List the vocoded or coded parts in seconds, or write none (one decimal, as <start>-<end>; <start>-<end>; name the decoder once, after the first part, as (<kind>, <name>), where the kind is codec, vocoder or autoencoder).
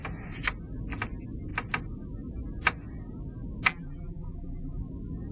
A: 3.7-4.8 (vocoder, BigVGAN v2)